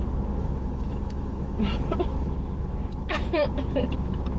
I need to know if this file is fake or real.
fake